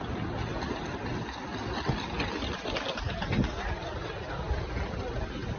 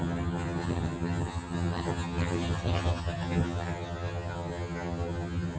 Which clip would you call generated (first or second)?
second